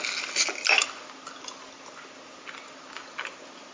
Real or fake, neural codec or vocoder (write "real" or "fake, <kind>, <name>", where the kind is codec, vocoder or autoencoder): real